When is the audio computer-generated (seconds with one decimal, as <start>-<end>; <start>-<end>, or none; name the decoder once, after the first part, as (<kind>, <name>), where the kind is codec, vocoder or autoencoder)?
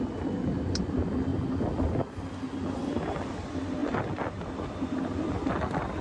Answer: none